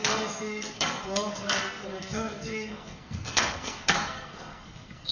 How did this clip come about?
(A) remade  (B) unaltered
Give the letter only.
A